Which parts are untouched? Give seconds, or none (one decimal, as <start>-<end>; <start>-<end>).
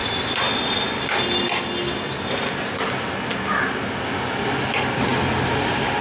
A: 0.0-6.0